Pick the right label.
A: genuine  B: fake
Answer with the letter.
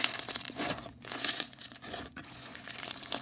B